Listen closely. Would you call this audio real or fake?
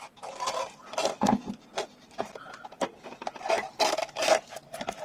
real